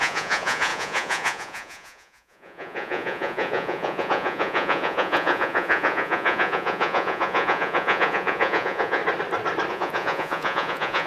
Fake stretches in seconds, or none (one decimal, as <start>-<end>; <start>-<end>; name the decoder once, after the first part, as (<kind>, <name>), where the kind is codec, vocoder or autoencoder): 0.0-9.0 (vocoder, Vocos); 9.7-11.1